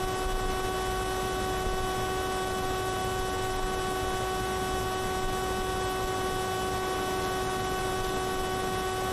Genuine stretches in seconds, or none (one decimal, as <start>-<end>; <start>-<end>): 0.0-9.1